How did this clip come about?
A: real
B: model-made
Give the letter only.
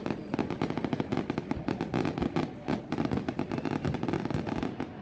A